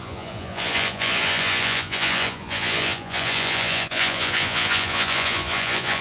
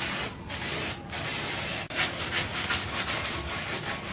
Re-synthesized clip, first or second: first